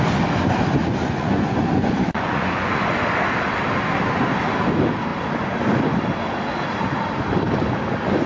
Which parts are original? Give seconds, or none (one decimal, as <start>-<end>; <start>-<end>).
0.0-0.8; 2.9-8.3